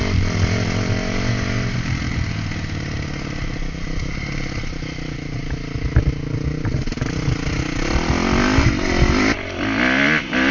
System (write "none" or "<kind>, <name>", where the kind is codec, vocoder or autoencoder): none